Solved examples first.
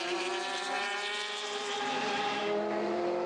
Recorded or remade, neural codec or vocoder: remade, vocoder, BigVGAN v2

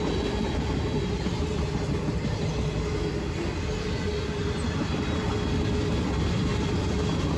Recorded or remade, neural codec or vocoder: recorded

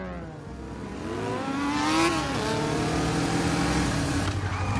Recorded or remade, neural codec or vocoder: recorded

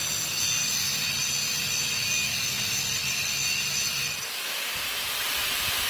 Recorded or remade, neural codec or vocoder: recorded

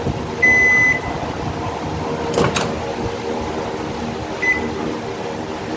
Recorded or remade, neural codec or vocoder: recorded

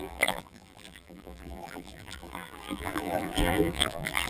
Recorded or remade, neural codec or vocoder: remade, vocoder, BigVGAN v2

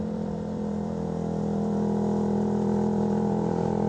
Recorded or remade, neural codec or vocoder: remade, vocoder, BigVGAN v2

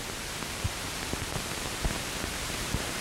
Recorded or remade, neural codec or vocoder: remade, vocoder, BigVGAN v2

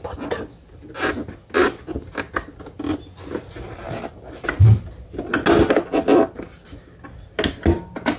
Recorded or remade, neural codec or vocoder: recorded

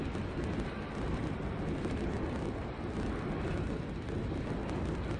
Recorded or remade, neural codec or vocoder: recorded